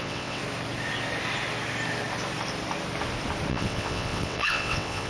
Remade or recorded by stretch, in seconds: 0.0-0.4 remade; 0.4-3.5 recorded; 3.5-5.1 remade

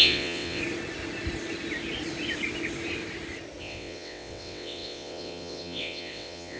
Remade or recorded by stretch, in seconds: 0.0-0.6 remade; 0.6-3.6 recorded; 3.6-6.6 remade

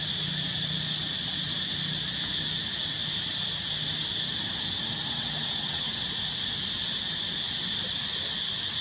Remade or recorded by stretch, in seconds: 0.0-5.0 recorded; 5.0-6.1 remade; 6.1-8.8 recorded

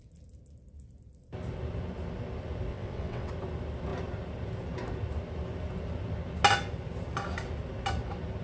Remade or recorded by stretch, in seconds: 0.0-2.7 recorded; 2.7-3.3 remade; 3.3-8.4 recorded

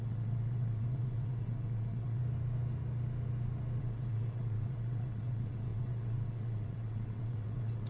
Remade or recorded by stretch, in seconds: 0.0-2.2 remade; 2.2-3.8 recorded; 3.8-7.9 remade